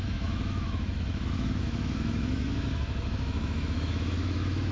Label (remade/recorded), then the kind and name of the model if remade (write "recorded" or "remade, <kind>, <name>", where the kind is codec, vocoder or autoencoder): remade, autoencoder, DAC-VAE